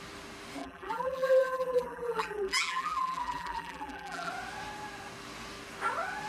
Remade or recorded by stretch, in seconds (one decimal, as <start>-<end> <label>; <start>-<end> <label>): 0.0-0.6 recorded; 0.6-4.3 remade; 4.3-6.3 recorded